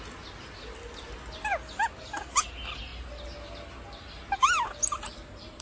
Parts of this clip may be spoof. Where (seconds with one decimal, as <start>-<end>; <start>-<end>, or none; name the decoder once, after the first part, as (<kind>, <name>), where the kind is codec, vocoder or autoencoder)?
none